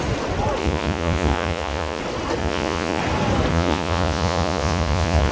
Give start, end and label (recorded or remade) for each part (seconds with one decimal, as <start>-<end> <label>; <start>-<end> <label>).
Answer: 0.0-0.6 recorded; 0.6-2.0 remade; 2.0-2.4 recorded; 2.4-3.0 remade; 3.0-3.5 recorded; 3.5-5.3 remade